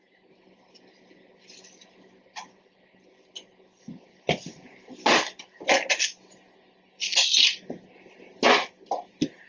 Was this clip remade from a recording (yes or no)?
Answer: no